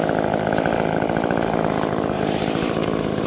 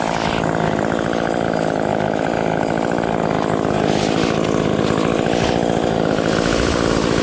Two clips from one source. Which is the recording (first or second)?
second